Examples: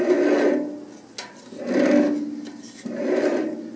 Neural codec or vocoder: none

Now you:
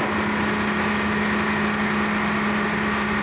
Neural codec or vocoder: none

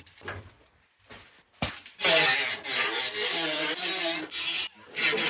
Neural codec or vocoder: none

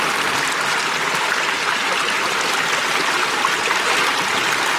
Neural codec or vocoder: none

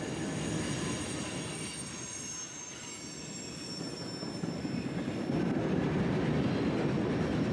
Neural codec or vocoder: none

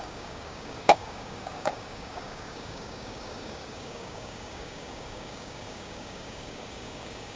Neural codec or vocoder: codec, DAC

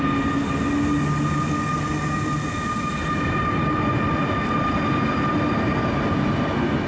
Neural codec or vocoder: none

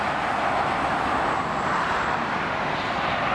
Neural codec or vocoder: none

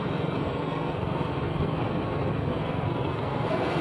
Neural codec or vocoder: codec, SNAC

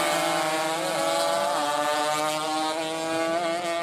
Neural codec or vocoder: none